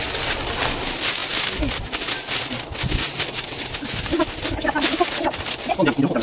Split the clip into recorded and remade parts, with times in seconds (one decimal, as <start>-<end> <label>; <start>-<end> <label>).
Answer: 0.0-6.2 recorded

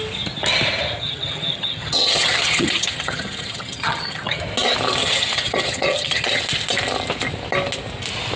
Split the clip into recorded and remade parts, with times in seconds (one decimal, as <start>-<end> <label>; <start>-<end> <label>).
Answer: 0.0-1.0 recorded; 1.0-4.4 remade; 4.4-5.0 recorded; 5.0-6.4 remade; 6.4-8.4 recorded

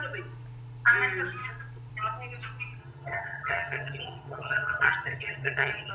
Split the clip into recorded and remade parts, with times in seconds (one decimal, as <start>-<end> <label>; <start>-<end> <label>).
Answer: 0.0-2.8 recorded; 2.8-5.9 remade

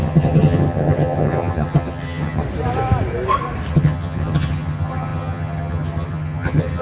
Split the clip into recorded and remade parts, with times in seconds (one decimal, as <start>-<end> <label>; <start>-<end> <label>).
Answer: 0.0-2.4 remade; 2.4-3.7 recorded; 3.7-6.8 remade

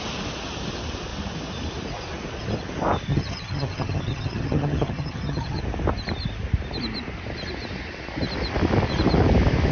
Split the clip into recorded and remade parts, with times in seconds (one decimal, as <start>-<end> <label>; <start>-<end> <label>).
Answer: 0.0-3.1 recorded; 3.1-5.6 remade; 5.6-9.7 recorded

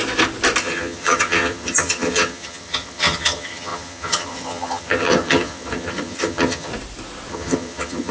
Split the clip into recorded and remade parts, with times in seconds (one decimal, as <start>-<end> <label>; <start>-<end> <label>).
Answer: 0.0-0.6 recorded; 0.6-6.7 remade; 6.7-7.3 recorded; 7.3-8.1 remade

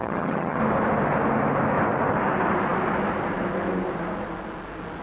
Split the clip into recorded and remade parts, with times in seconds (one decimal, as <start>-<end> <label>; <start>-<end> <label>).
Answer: 0.0-0.6 remade; 0.6-5.0 recorded